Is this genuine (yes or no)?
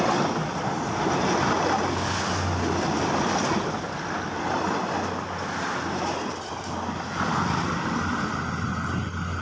yes